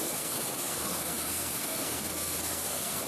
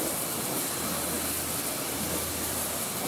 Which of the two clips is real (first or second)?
second